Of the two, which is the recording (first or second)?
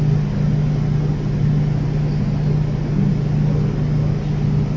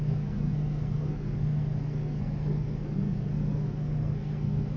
first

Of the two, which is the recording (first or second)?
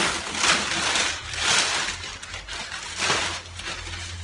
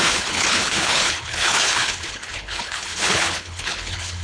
first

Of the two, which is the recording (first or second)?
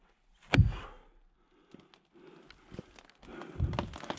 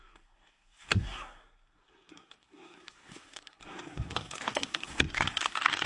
first